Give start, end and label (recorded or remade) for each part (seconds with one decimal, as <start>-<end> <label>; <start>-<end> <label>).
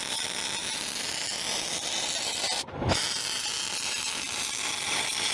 0.0-5.3 recorded